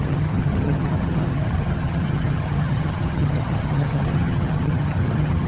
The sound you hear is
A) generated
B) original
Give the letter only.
A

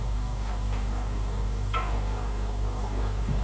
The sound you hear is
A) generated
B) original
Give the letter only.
A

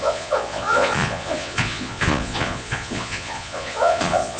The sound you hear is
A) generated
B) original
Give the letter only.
A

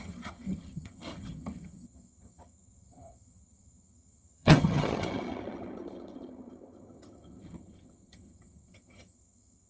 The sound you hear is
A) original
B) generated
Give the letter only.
B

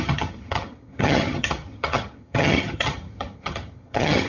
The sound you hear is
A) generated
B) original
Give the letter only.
A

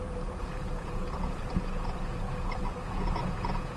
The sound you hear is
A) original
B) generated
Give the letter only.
B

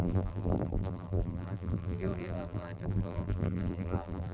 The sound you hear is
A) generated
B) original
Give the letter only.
A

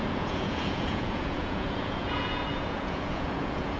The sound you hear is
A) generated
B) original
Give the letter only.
A